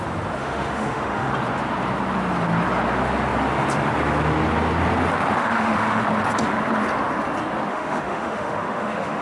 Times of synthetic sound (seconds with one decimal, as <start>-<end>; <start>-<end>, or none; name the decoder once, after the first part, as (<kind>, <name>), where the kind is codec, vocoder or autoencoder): 0.4-1.3 (autoencoder, DAC-VAE); 5.4-6.0; 7.7-9.2